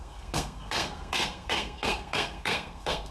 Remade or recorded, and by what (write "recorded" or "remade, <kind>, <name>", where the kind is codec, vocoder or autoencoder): remade, codec, SNAC